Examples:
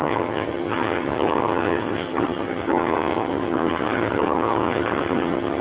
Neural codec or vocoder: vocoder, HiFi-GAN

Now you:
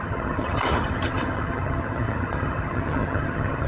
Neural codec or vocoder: vocoder, HiFi-GAN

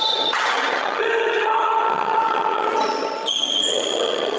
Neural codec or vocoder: vocoder, HiFi-GAN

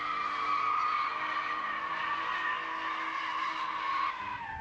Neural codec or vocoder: none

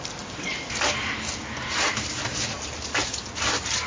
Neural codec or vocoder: none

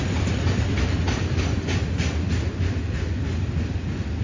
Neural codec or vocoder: none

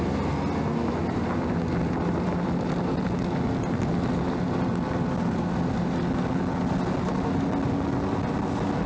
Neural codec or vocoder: none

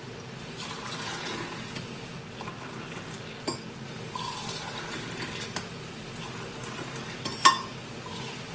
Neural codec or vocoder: none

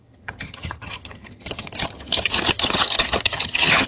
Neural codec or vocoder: vocoder, HiFi-GAN